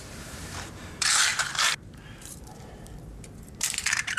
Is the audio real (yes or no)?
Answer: no